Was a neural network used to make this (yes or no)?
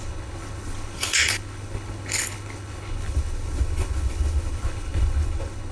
yes